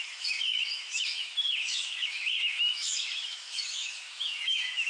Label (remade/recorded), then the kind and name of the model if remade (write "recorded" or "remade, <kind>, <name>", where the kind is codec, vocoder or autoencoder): remade, autoencoder, DAC-VAE